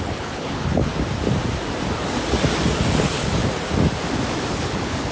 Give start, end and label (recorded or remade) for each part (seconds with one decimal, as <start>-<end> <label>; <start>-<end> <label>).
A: 0.0-0.9 remade; 0.9-3.0 recorded; 3.0-3.4 remade; 3.4-4.5 recorded; 4.5-5.1 remade